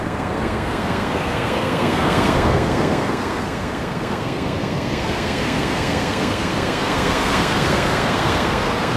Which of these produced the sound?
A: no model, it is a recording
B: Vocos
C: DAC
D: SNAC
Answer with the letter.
D